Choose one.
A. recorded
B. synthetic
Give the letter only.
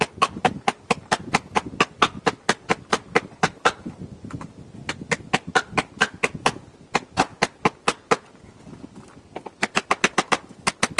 A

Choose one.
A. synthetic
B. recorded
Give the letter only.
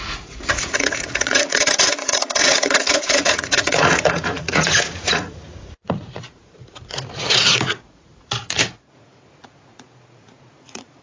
A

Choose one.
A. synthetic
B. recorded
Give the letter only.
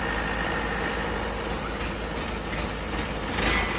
B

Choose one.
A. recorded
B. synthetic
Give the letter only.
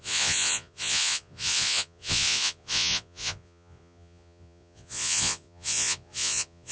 B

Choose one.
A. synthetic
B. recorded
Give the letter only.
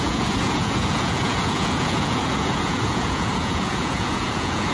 A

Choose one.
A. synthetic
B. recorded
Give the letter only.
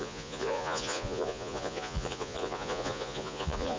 A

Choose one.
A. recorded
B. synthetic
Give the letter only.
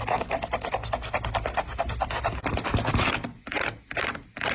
A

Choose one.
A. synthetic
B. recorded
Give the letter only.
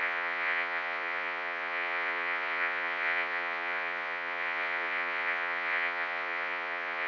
A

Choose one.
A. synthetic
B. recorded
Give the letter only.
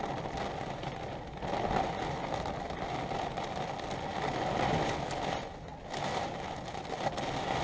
B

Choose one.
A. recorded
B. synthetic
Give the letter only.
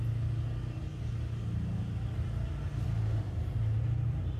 A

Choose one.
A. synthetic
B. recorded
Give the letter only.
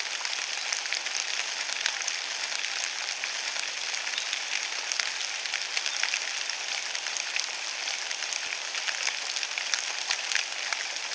B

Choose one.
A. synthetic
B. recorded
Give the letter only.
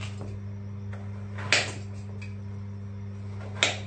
B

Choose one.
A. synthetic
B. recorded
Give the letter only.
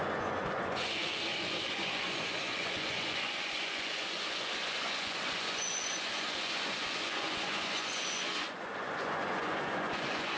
A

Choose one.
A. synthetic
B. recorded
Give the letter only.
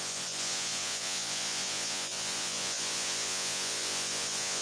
A